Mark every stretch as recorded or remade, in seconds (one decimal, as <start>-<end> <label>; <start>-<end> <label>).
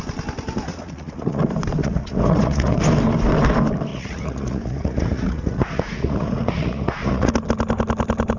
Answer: 0.0-0.7 recorded; 0.7-1.4 remade; 1.4-1.8 recorded; 1.8-2.8 remade; 2.8-3.9 recorded; 3.9-7.3 remade; 7.3-8.4 recorded